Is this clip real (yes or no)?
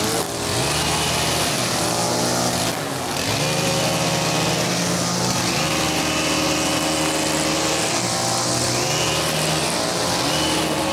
yes